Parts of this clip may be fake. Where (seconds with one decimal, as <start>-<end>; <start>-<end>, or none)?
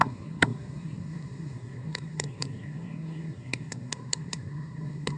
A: 0.0-5.2